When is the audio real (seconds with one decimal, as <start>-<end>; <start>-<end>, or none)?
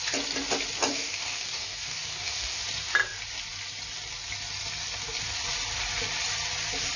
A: 0.0-0.9; 2.6-7.0